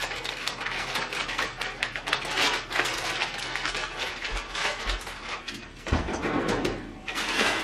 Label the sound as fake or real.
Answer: fake